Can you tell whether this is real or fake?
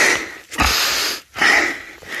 real